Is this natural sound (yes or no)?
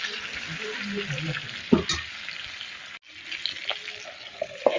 yes